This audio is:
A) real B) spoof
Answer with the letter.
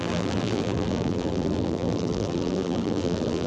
B